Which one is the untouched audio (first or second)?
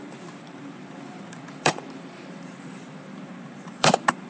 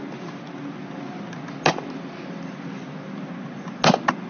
second